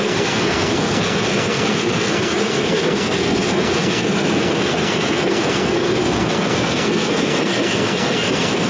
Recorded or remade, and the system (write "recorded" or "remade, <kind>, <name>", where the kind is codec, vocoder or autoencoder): remade, codec, SNAC